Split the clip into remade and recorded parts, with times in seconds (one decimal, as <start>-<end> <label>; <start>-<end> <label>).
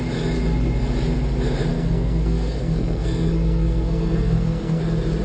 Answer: 0.0-1.7 recorded; 1.7-4.8 remade; 4.8-5.2 recorded